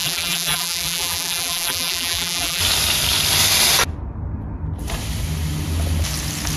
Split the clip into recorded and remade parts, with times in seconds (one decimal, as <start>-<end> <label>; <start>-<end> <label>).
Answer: 0.0-2.6 remade; 2.6-6.6 recorded